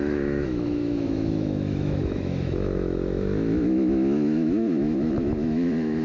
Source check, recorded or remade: remade